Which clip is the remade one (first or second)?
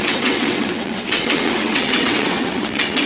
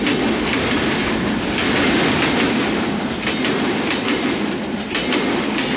first